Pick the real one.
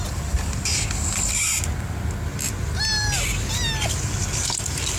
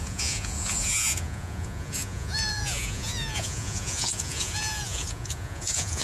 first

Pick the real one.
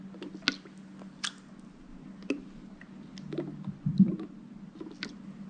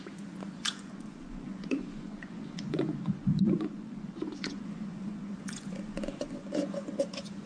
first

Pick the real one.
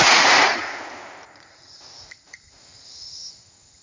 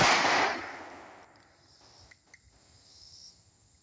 second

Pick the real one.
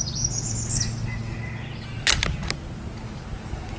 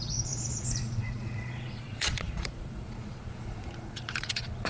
first